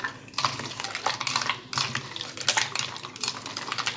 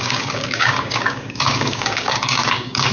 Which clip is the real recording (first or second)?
first